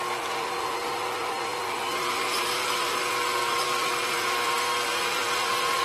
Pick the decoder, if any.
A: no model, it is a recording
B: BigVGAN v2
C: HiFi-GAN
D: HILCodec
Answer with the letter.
A